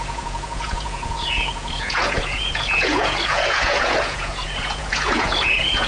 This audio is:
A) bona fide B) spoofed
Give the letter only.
B